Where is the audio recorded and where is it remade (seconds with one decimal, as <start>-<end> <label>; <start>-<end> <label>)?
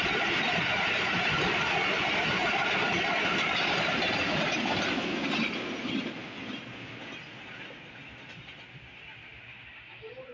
0.0-10.3 recorded